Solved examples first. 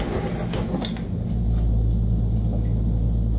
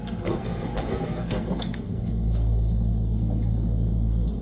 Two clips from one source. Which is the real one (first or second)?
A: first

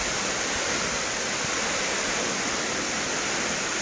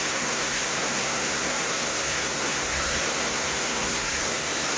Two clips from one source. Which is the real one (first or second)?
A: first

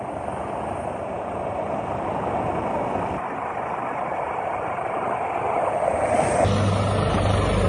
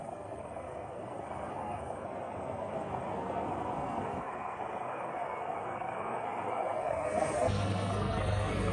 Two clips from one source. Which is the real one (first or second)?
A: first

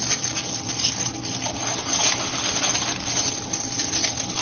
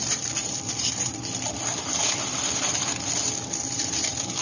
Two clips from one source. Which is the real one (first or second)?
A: first